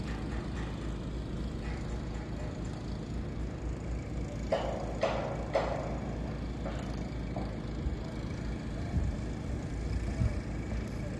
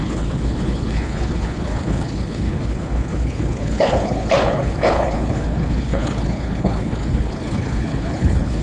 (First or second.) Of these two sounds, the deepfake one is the second